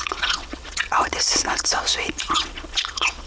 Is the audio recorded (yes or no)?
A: no